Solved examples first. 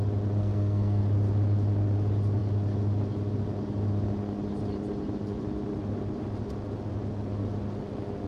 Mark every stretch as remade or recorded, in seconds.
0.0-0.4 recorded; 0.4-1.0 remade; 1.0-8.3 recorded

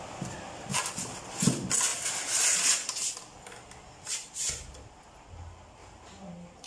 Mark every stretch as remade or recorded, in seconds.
0.0-5.8 recorded; 5.8-6.7 remade

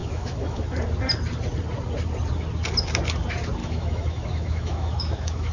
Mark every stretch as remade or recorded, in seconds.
0.0-0.6 remade; 0.6-3.6 recorded; 3.6-5.5 remade